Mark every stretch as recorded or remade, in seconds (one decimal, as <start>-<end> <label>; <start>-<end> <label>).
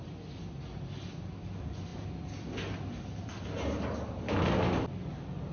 0.0-5.5 recorded